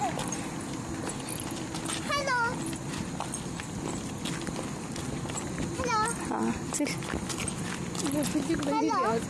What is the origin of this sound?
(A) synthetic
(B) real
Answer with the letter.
B